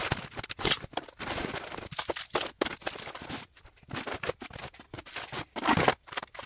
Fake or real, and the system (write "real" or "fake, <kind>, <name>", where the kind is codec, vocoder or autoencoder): real